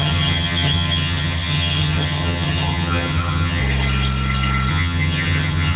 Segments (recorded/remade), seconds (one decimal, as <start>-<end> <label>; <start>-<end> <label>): 0.0-3.6 remade; 3.6-4.7 recorded; 4.7-5.8 remade